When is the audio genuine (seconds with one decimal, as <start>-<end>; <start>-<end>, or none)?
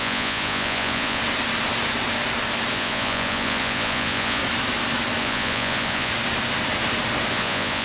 1.2-2.7; 4.4-5.2; 6.1-7.3